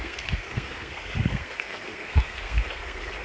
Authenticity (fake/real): fake